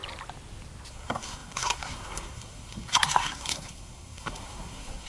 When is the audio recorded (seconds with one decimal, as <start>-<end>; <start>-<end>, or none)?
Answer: 0.0-0.9

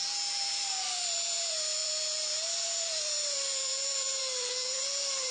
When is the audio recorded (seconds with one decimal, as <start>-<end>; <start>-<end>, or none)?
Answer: none